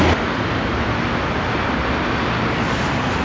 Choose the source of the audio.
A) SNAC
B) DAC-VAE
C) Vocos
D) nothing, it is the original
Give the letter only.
D